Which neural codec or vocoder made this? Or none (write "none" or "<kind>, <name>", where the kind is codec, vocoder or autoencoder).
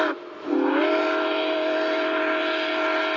none